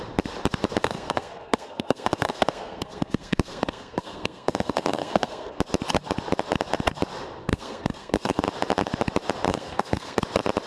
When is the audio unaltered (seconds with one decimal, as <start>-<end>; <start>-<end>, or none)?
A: 0.0-0.8; 5.6-7.4; 8.4-9.5; 10.2-10.7